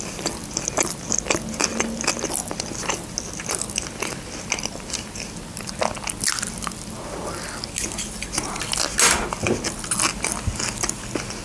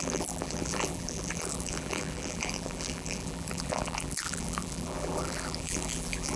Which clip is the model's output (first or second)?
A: second